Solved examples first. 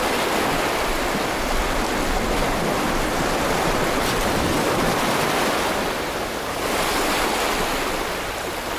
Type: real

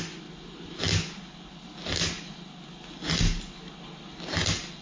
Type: real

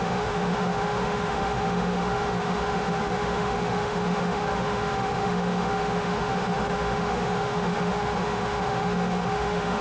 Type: fake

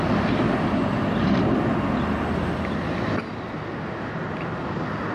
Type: real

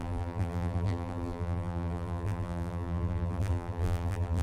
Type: fake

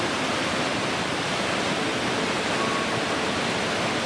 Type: real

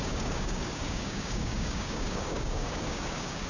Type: fake